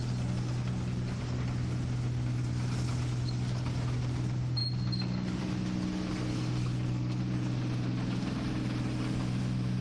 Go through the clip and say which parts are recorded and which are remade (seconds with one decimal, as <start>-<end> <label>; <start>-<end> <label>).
0.0-6.3 recorded; 6.3-7.2 remade; 7.2-9.8 recorded